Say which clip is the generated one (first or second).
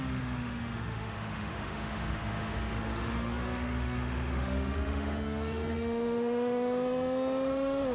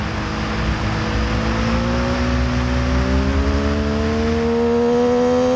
first